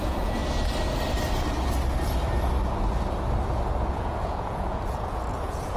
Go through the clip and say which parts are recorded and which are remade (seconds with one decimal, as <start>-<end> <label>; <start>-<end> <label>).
0.0-0.4 remade; 0.4-3.9 recorded; 3.9-5.8 remade